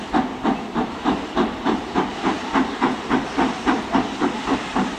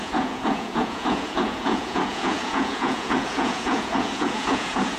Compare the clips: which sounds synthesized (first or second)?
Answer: second